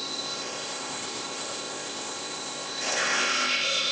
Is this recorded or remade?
remade